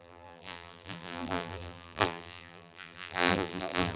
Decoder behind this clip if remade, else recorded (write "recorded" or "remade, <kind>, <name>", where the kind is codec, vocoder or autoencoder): remade, vocoder, BigVGAN v2